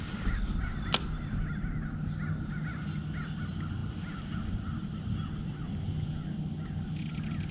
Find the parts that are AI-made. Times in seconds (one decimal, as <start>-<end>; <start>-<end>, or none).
none